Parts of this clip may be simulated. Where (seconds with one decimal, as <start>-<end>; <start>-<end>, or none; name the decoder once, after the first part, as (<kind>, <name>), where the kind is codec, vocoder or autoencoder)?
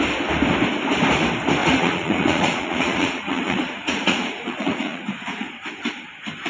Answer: 1.6-5.5 (vocoder, Vocos)